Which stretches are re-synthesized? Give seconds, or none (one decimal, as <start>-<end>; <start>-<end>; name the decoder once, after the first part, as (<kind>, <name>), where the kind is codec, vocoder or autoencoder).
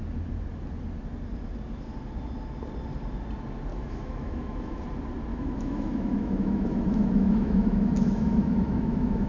3.7-4.8 (autoencoder, DAC-VAE); 5.3-9.3